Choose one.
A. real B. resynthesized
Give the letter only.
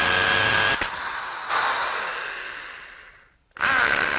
A